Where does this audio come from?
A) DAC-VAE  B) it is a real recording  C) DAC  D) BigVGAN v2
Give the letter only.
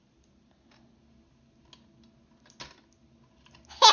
B